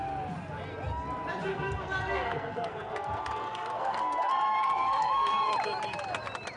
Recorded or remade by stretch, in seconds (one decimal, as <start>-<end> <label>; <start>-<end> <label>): 0.0-1.5 recorded; 1.5-5.5 remade; 5.5-6.6 recorded